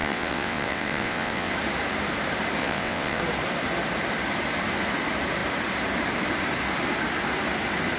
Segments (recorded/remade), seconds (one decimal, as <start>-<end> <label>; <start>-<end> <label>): 0.0-1.5 remade; 1.5-2.6 recorded; 2.6-3.2 remade; 3.2-8.0 recorded